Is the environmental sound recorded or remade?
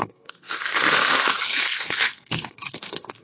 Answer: remade